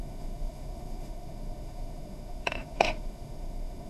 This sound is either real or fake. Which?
fake